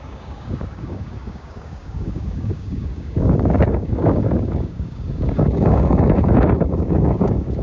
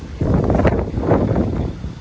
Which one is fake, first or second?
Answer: first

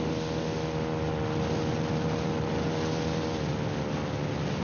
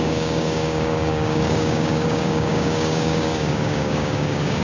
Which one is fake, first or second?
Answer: second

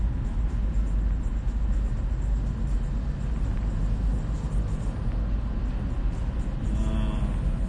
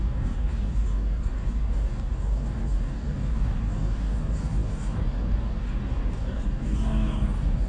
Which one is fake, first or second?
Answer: second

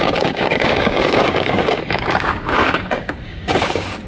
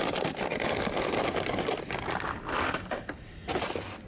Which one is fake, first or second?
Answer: first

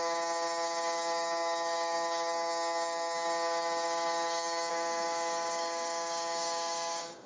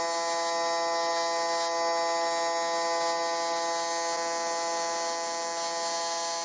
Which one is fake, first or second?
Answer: first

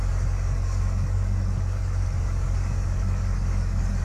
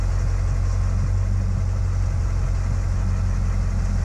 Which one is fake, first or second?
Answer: first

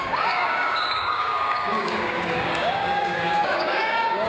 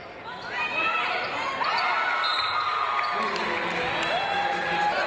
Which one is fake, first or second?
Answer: first